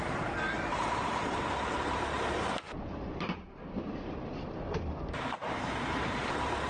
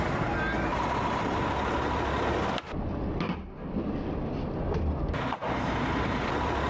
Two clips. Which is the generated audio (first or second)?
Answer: first